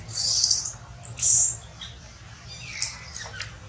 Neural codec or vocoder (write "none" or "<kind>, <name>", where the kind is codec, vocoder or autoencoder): none